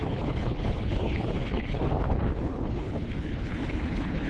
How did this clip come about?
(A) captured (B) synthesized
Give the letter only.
B